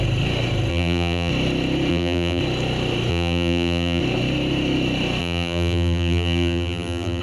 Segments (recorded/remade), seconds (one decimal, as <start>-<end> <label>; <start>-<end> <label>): 0.0-0.7 recorded; 0.7-1.3 remade; 1.3-1.9 recorded; 1.9-2.4 remade; 2.4-3.1 recorded; 3.1-4.0 remade; 4.0-5.2 recorded; 5.2-7.2 remade